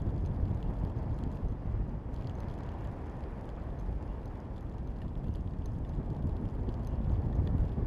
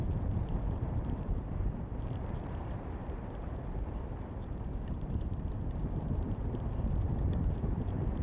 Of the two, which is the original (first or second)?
first